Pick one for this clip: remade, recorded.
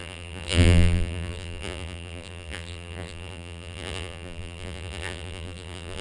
remade